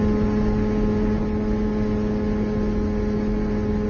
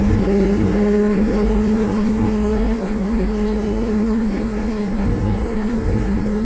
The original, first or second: first